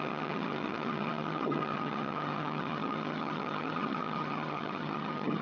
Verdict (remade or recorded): remade